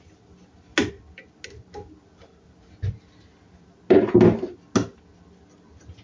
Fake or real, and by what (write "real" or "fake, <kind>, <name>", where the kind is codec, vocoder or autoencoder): real